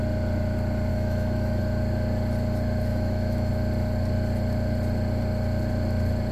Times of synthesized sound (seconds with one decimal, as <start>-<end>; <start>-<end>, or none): 0.9-1.6; 2.9-3.5